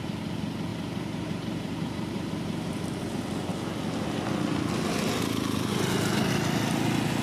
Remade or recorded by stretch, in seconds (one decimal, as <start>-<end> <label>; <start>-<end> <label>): 0.0-0.7 recorded; 0.7-3.0 remade; 3.0-7.2 recorded